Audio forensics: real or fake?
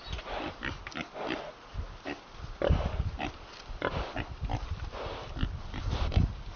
real